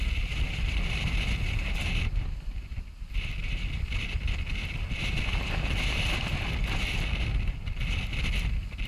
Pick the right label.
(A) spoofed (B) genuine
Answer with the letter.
B